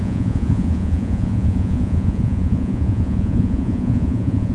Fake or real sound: fake